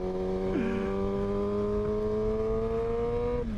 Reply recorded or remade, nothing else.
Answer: recorded